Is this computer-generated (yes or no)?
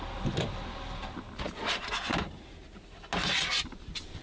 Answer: no